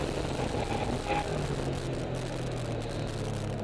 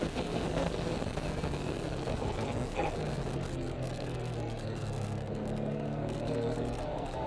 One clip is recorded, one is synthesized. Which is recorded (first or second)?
first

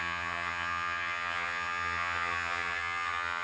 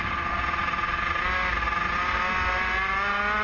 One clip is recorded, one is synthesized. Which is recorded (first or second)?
second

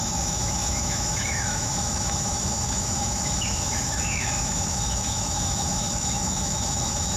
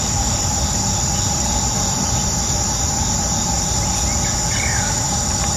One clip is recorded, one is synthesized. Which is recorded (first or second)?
second